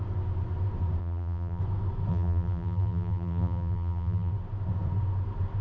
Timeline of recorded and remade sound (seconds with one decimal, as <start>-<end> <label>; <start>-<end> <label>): 0.0-1.0 recorded; 1.0-1.6 remade; 1.6-2.1 recorded; 2.1-4.3 remade; 4.3-5.6 recorded